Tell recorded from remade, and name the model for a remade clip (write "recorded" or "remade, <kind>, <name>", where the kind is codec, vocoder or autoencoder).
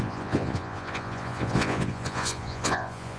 remade, vocoder, Vocos